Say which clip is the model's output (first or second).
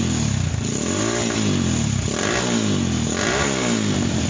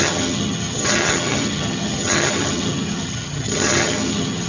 second